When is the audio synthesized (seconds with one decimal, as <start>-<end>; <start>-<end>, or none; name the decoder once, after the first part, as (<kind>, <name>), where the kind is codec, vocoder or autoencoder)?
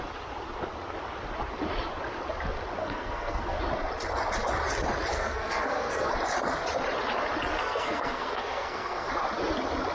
2.8-3.6 (codec, SNAC); 5.1-6.1; 7.5-9.1